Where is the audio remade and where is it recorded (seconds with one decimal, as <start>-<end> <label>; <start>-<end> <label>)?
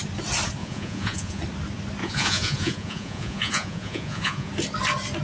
0.0-0.6 recorded; 0.6-1.4 remade; 1.4-2.0 recorded; 2.0-4.5 remade; 4.5-5.2 recorded